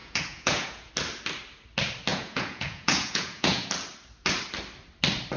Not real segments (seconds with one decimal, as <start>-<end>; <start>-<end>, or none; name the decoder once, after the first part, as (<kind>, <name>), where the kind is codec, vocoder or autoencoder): 0.0-0.9 (vocoder, Vocos); 2.1-3.7